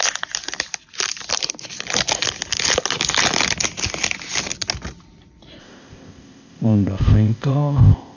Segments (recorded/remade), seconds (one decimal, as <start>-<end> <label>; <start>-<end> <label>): 0.0-5.6 recorded; 5.6-8.2 remade